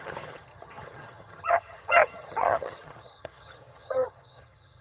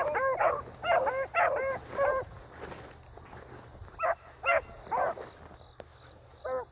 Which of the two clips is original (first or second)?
second